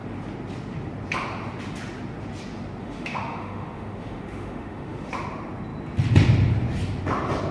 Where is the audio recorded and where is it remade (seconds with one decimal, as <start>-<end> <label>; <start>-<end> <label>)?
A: 0.0-2.8 recorded; 2.8-5.1 remade; 5.1-7.5 recorded